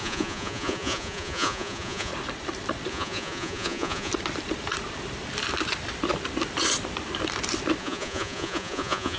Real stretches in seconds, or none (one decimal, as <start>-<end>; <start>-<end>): 2.1-2.9; 4.1-7.8